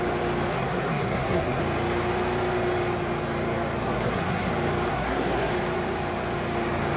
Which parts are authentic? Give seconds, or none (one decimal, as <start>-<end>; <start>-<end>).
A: 0.0-0.5; 1.6-3.8; 4.5-4.9; 5.5-7.0